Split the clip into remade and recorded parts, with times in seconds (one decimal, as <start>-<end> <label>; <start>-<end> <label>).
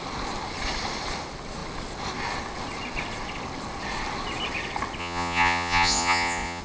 0.0-5.0 recorded; 5.0-6.6 remade